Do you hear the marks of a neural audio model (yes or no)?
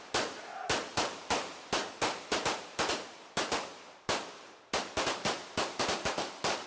yes